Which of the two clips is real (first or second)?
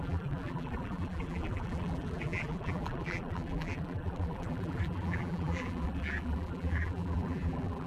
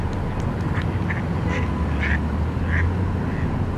second